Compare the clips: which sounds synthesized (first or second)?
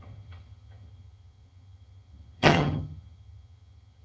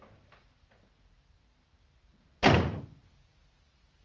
first